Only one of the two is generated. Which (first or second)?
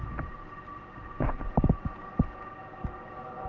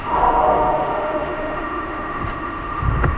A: second